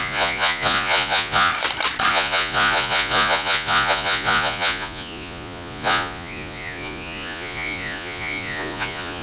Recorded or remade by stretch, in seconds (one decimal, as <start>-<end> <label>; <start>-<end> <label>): 0.0-1.5 remade; 1.5-2.1 recorded; 2.1-9.2 remade